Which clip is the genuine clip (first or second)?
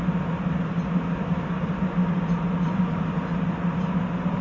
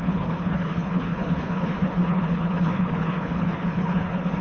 first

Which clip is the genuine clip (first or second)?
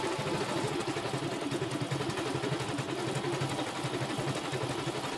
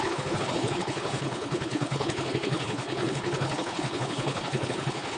first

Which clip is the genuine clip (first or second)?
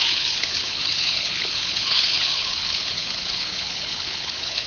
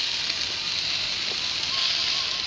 second